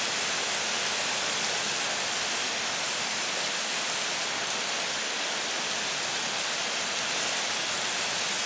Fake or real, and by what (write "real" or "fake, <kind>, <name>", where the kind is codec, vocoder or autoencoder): real